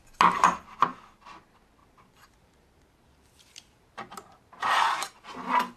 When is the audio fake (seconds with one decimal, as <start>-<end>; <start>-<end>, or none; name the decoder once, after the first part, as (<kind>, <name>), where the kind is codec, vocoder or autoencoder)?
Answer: 1.8-5.2 (vocoder, BigVGAN v2)